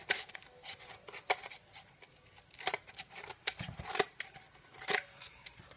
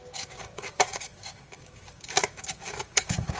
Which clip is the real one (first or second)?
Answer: first